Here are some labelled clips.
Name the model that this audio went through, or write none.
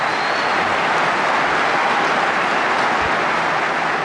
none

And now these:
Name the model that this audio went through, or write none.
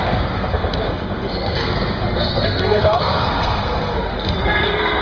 codec, SNAC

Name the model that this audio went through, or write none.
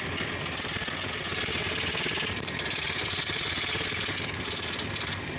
none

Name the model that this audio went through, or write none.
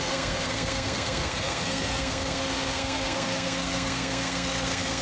codec, SNAC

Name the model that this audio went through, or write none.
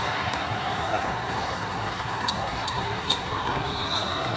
codec, SNAC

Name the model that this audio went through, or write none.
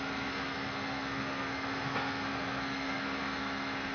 codec, SNAC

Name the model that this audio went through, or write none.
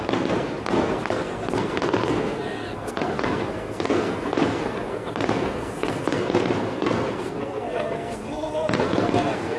codec, SNAC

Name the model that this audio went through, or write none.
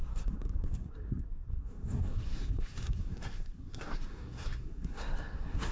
codec, SNAC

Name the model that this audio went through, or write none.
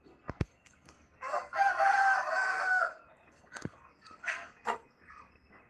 codec, SNAC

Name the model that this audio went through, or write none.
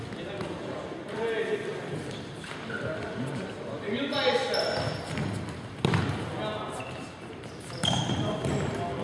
none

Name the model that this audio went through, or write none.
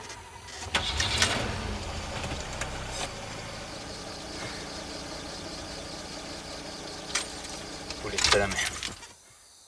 none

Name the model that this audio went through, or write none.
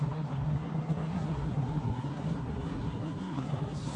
codec, SNAC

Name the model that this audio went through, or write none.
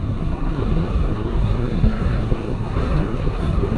codec, SNAC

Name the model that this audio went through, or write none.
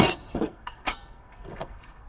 codec, SNAC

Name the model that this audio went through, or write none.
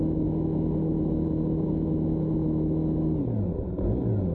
none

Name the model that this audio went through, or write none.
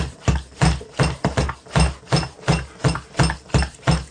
none